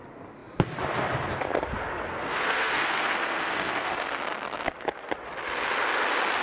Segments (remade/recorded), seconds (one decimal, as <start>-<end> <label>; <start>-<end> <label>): 0.0-2.1 recorded; 2.1-4.1 remade; 4.1-6.4 recorded